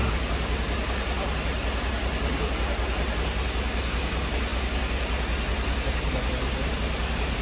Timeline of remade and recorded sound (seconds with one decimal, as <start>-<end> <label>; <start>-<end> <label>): 0.0-7.4 recorded